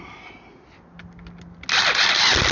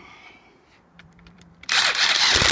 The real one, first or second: first